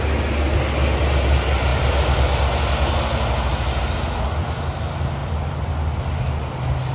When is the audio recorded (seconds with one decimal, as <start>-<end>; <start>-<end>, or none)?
0.0-5.2; 6.0-6.9